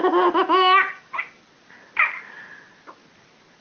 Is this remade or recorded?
recorded